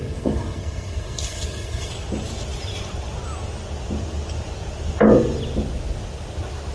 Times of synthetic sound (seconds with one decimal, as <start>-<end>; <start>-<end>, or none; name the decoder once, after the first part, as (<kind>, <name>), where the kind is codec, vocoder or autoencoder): 0.0-1.9 (codec, SNAC)